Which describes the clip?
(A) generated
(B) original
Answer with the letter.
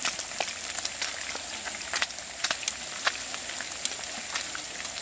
B